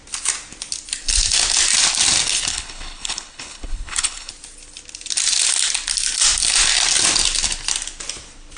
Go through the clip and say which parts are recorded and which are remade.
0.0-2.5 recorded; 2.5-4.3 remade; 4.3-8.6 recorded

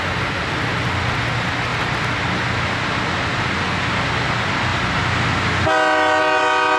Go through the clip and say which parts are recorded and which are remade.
0.0-6.8 recorded

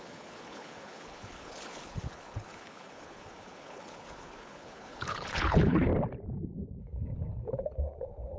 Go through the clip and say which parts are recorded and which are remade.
0.0-5.9 remade; 5.9-6.8 recorded; 6.8-8.4 remade